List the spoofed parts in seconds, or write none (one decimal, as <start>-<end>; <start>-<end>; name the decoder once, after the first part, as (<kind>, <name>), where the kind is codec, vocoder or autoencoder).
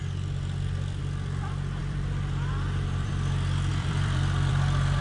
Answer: 1.8-3.1 (vocoder, BigVGAN v2); 3.7-4.5